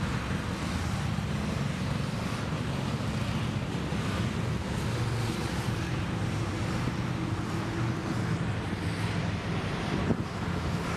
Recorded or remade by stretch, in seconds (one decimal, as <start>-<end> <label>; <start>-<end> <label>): 0.0-11.0 recorded